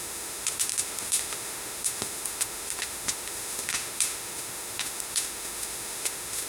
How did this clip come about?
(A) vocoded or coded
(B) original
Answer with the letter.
A